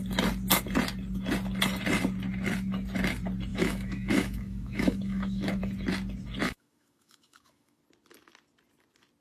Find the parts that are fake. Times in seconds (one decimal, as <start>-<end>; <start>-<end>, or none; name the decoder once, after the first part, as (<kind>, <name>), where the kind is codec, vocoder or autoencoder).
3.5-5.6 (autoencoder, DAC-VAE); 6.4-7.8